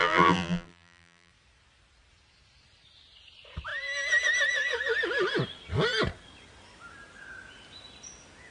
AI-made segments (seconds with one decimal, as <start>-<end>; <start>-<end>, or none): 0.0-1.3